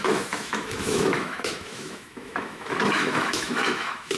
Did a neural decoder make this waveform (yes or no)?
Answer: yes